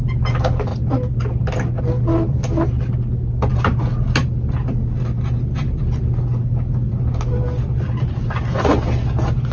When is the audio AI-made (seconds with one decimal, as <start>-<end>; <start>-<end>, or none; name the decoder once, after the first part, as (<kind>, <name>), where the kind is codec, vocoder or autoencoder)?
none